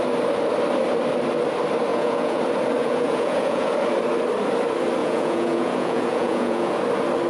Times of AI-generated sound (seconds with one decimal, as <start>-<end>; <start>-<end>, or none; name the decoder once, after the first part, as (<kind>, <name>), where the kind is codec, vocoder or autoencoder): 1.9-2.4 (vocoder, Vocos); 2.8-3.7; 5.0-6.8